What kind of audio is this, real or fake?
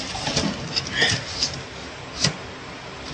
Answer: real